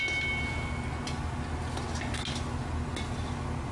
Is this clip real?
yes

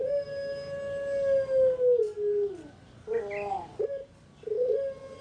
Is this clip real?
yes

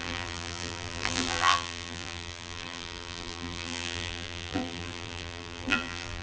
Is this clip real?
no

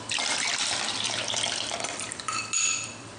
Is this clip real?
no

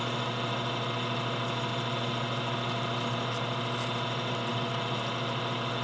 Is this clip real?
yes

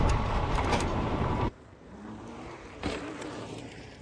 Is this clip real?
no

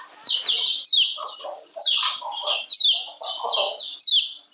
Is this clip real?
yes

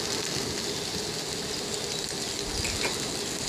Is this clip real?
yes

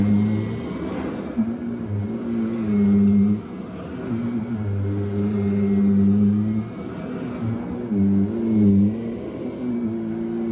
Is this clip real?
yes